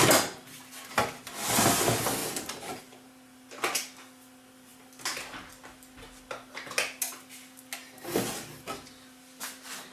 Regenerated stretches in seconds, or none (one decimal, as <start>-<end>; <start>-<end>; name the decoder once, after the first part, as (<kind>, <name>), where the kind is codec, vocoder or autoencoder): 2.2-2.8 (vocoder, BigVGAN v2)